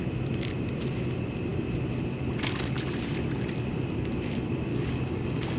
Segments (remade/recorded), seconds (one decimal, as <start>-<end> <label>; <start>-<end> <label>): 0.0-4.7 recorded; 4.7-5.6 remade